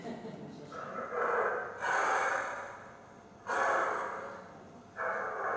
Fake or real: real